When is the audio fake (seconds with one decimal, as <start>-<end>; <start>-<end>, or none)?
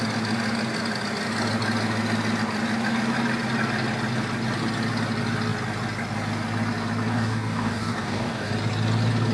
7.1-8.5